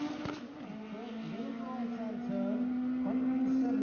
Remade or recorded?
recorded